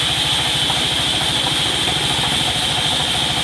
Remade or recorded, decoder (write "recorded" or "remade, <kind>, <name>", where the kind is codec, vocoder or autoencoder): recorded